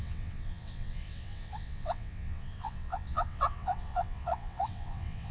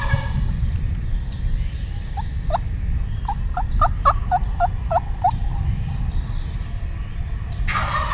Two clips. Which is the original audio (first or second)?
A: second